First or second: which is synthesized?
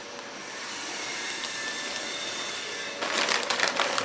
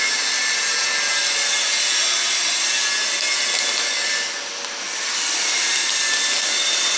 first